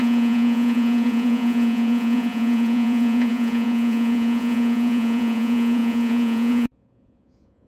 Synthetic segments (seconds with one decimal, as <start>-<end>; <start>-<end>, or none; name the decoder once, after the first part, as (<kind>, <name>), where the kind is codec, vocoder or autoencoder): 0.0-7.7 (vocoder, Vocos)